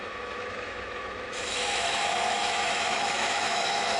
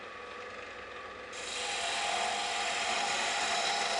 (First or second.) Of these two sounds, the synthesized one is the first